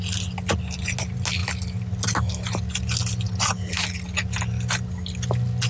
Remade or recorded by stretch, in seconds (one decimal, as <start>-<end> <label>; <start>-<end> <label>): 0.0-5.7 recorded